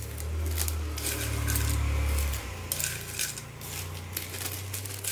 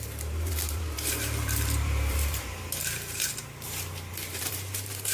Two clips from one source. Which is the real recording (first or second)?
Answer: first